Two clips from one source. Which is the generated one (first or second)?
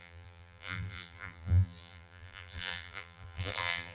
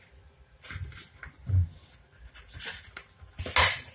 first